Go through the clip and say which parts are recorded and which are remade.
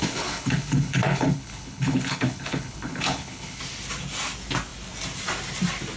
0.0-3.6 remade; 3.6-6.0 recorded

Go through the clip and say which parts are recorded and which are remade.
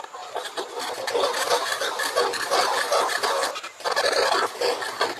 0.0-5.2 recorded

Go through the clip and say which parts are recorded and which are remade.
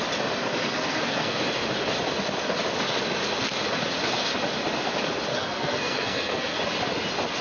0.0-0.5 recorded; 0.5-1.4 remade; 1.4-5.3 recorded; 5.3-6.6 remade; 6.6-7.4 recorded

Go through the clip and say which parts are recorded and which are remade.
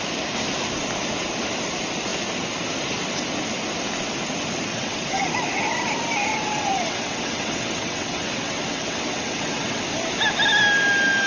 0.0-4.7 recorded; 4.7-5.3 remade; 5.3-6.3 recorded; 6.3-9.8 remade; 9.8-11.3 recorded